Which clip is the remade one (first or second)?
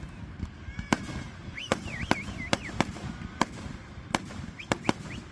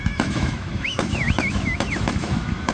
second